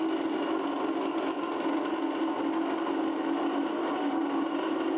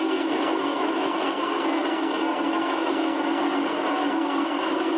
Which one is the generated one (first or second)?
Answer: second